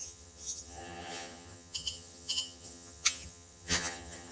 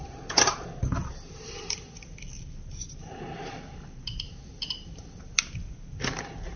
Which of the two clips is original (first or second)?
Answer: second